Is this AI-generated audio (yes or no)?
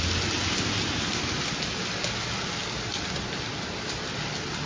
no